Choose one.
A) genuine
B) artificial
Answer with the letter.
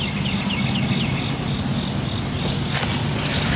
A